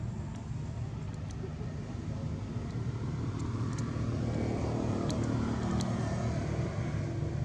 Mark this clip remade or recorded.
recorded